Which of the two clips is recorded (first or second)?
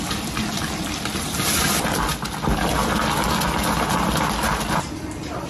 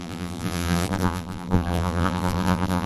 first